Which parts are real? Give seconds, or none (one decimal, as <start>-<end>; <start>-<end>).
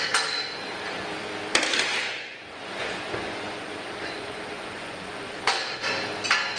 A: 0.0-1.9; 5.6-6.6